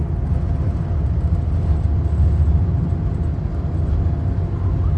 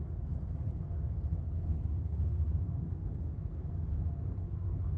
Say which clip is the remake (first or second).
second